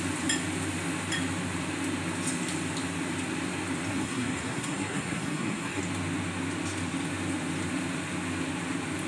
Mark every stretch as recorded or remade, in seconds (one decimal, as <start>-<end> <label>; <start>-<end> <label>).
0.0-3.9 recorded; 3.9-5.8 remade; 5.8-9.1 recorded